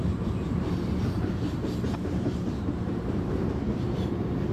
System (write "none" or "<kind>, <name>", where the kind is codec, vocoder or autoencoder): vocoder, BigVGAN v2